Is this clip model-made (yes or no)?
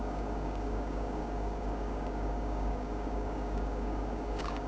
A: yes